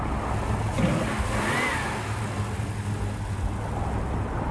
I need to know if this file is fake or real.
real